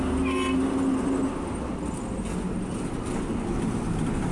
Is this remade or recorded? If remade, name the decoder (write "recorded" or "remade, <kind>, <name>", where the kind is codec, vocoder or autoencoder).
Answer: recorded